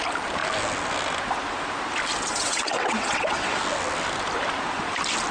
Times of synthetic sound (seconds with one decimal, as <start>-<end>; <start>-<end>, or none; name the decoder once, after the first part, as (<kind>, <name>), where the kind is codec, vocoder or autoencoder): 2.3-3.6 (vocoder, WaveNeXt)

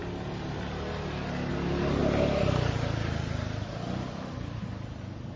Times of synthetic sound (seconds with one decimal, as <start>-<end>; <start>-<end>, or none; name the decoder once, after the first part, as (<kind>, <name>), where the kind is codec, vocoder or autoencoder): none

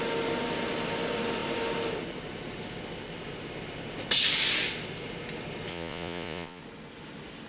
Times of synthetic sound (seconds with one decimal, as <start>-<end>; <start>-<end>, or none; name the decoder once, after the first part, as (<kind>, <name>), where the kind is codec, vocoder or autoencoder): 5.7-6.6 (vocoder, Vocos)

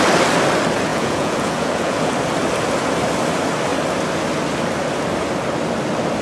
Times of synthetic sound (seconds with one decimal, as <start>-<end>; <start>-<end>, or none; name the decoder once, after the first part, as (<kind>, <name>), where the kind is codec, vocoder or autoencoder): 0.9-2.1 (vocoder, Vocos)

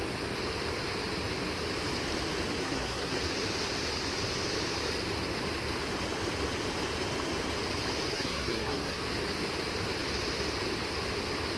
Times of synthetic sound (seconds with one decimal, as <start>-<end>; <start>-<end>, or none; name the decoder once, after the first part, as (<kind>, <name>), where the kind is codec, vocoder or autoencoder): 2.6-3.2 (codec, SNAC); 8.1-9.0

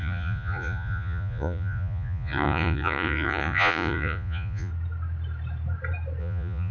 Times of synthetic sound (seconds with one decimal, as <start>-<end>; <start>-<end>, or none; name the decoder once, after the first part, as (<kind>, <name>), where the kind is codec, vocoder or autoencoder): 0.0-4.7 (vocoder, Vocos); 6.2-6.7

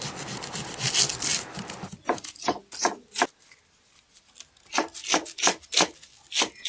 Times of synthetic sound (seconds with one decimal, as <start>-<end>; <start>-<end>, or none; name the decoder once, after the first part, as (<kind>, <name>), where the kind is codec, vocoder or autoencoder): none

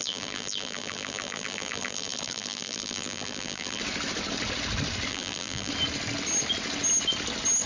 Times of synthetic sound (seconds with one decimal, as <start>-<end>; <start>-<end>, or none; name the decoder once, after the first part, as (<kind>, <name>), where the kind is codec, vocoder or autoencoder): 0.0-3.8 (vocoder, BigVGAN v2); 5.1-5.7